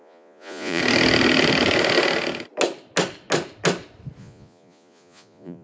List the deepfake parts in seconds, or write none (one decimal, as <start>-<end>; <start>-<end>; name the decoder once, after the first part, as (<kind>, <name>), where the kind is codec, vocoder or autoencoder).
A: 0.0-0.8 (vocoder, Vocos); 4.2-5.6